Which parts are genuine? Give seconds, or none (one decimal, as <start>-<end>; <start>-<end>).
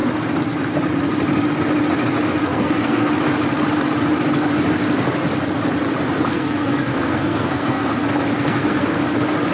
0.0-2.5; 3.1-6.3; 7.8-8.3; 9.0-9.5